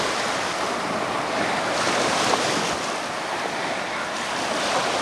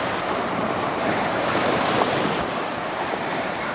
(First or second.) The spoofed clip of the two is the second